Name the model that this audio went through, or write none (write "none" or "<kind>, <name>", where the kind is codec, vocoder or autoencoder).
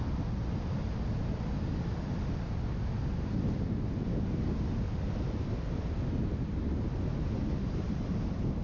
none